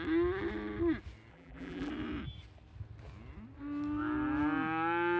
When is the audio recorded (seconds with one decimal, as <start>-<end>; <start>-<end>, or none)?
0.0-1.3; 1.9-5.2